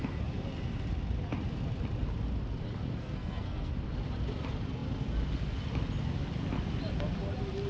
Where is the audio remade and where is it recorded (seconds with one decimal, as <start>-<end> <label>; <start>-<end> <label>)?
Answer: 0.0-3.0 recorded; 3.0-3.7 remade; 3.7-7.7 recorded